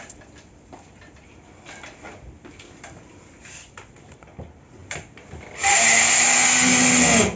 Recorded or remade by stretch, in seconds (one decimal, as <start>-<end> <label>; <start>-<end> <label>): 0.0-7.4 recorded